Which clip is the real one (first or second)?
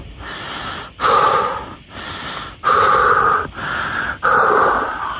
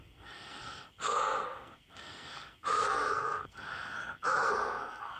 first